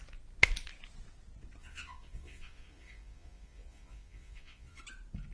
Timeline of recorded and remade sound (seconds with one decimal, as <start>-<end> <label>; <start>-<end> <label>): 0.0-1.6 recorded; 1.6-4.8 remade; 4.8-5.3 recorded